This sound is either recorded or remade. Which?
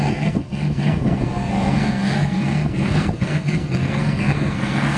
remade